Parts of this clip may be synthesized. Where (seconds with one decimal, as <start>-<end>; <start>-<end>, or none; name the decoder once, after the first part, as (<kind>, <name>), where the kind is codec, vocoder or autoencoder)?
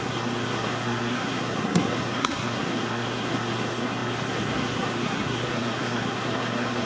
0.0-6.9 (codec, SNAC)